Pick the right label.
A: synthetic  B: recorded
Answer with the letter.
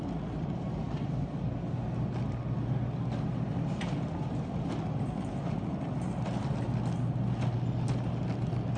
B